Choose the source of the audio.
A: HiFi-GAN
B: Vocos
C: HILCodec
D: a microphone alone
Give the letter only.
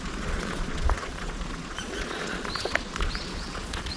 B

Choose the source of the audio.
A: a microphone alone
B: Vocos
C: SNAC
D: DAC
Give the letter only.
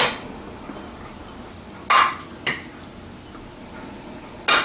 A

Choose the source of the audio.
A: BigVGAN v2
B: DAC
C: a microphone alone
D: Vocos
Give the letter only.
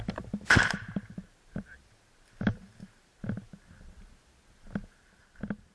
C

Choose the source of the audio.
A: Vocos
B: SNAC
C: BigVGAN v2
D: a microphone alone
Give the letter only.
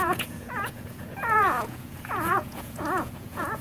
A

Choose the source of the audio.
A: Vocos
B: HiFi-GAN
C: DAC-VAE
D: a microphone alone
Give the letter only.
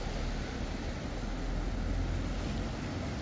D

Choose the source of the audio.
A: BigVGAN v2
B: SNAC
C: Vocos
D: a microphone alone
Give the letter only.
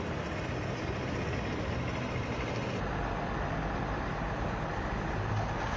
D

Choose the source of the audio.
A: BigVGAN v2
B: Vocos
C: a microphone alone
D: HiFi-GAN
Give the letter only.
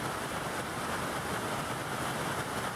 C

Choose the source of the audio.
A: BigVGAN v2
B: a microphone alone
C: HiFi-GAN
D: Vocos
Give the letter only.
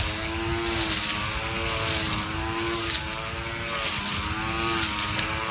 B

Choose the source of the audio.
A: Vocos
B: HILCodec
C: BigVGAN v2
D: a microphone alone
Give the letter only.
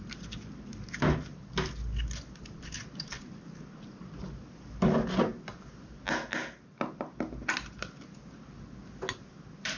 D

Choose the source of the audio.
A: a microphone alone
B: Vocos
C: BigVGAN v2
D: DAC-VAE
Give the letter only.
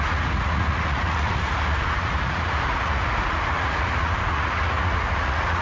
B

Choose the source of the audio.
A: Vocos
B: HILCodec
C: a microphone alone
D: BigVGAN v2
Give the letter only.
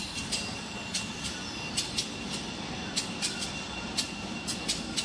C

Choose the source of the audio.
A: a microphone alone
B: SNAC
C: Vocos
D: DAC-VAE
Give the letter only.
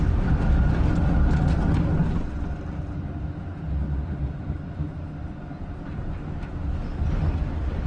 A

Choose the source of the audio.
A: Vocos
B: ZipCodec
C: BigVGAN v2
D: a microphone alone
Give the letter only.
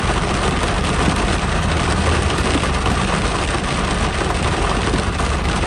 D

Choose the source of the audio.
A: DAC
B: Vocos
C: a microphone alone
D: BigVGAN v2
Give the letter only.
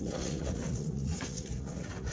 B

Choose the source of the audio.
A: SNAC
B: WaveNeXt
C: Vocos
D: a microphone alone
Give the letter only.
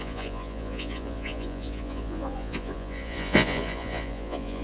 C